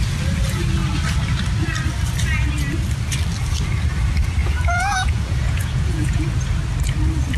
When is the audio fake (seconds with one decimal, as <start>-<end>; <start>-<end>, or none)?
4.4-6.2